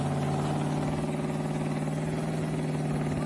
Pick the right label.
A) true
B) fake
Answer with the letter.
A